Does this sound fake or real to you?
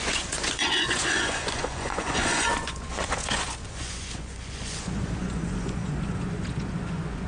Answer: fake